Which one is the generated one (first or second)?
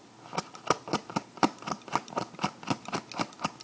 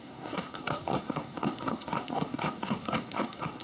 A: second